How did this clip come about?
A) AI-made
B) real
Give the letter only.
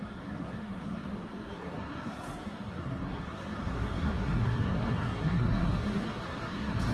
A